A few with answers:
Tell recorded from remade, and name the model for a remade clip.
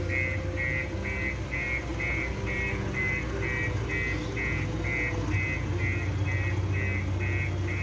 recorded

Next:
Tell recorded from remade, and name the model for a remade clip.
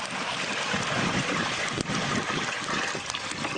recorded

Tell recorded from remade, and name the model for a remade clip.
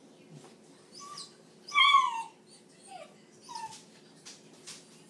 recorded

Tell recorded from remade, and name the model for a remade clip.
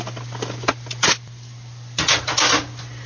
recorded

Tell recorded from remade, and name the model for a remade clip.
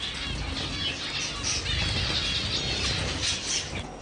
recorded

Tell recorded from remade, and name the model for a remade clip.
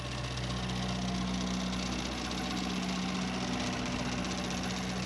recorded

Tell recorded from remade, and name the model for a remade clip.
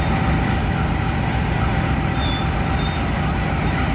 recorded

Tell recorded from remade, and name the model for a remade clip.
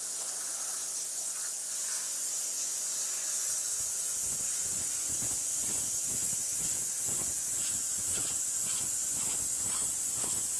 remade, vocoder, Vocos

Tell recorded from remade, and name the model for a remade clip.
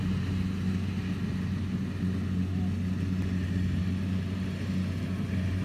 recorded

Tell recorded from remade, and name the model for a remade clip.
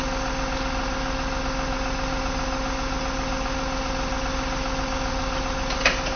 recorded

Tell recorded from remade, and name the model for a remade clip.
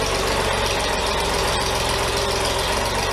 recorded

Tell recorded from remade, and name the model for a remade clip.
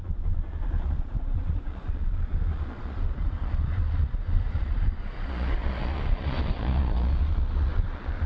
remade, vocoder, Vocos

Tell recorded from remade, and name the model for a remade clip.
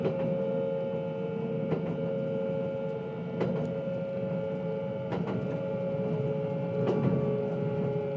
recorded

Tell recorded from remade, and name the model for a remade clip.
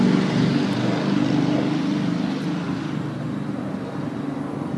recorded